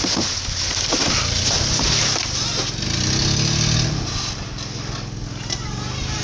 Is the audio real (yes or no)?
yes